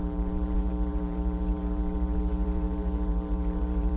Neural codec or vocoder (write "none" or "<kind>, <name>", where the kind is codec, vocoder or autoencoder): vocoder, BigVGAN v2